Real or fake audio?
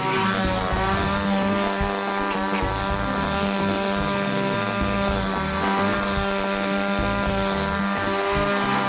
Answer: real